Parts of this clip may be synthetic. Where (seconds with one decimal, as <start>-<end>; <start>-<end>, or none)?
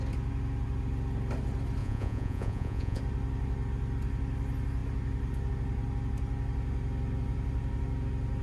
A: 1.8-3.0